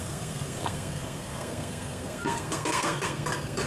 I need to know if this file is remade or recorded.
remade